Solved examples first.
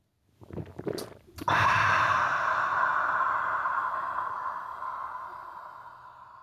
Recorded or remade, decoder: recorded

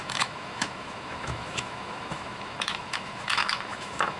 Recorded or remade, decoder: remade, autoencoder, DAC-VAE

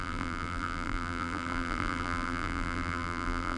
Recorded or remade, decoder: remade, vocoder, BigVGAN v2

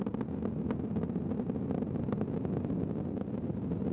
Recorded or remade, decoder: recorded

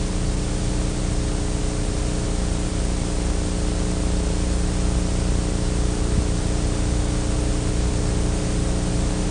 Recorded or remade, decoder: recorded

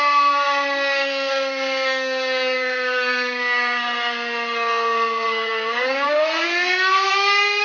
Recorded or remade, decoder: remade, codec, SNAC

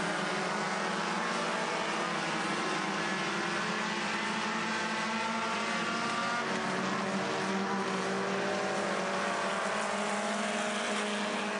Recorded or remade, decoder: recorded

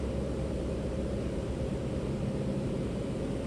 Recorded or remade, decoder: recorded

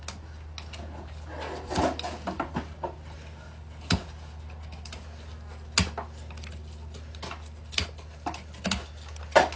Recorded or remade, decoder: recorded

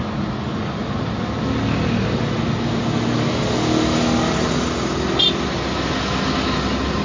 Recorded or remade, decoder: recorded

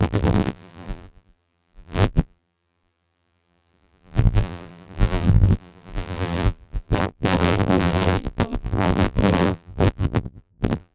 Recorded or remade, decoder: remade, vocoder, BigVGAN v2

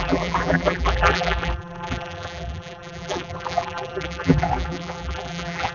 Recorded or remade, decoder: remade, vocoder, BigVGAN v2